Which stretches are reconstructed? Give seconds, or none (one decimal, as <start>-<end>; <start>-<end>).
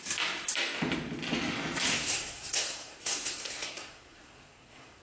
1.9-5.0